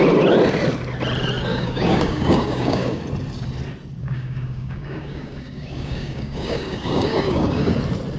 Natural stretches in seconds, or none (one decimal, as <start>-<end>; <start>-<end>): 0.0-1.5; 3.0-4.0; 7.7-8.2